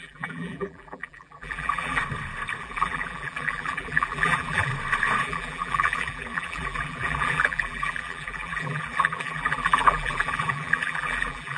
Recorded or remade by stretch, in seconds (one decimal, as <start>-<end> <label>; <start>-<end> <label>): 0.0-2.0 remade; 2.0-2.6 recorded; 2.6-4.7 remade; 4.7-5.2 recorded; 5.2-11.6 remade